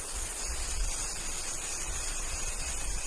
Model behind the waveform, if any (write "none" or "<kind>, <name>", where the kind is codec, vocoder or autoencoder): none